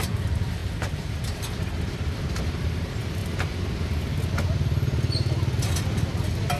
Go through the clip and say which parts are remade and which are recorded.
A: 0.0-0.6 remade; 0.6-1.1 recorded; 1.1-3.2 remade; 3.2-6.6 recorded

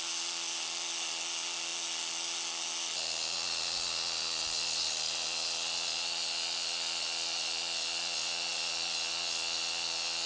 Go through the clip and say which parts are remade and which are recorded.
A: 0.0-10.3 recorded